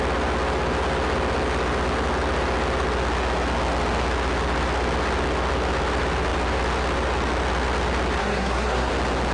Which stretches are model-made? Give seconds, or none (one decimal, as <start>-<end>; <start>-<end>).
8.2-8.9